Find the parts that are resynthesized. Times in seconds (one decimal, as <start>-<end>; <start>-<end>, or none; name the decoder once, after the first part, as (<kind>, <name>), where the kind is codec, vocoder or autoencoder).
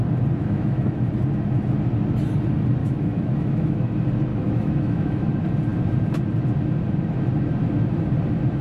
0.4-1.1 (autoencoder, DAC-VAE); 2.8-3.9; 4.3-5.3